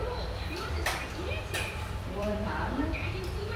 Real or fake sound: fake